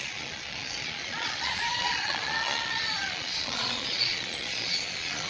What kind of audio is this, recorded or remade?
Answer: remade